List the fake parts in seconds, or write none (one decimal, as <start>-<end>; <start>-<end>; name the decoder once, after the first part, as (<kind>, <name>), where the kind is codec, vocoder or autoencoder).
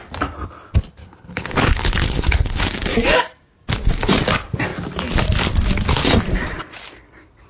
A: 1.0-2.6 (codec, HILCodec)